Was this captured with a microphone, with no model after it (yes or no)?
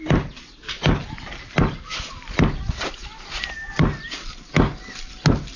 yes